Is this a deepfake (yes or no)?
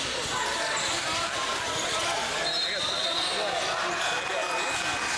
no